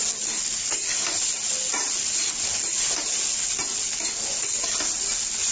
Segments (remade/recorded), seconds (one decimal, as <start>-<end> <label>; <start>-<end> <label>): 0.0-5.5 recorded